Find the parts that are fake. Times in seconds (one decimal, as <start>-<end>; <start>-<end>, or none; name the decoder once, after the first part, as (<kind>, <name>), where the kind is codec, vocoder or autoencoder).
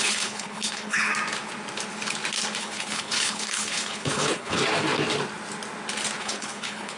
0.0-1.1 (codec, HILCodec); 2.6-4.6; 6.2-7.0